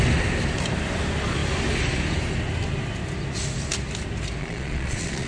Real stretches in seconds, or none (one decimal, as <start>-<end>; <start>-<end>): 0.0-4.4